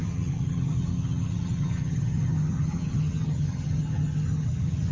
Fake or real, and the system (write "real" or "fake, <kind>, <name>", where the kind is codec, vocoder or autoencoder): fake, vocoder, HiFi-GAN